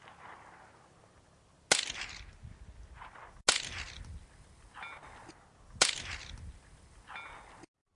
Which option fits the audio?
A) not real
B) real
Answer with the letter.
B